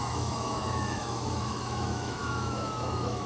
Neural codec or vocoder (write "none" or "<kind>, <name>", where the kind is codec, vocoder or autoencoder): autoencoder, DAC-VAE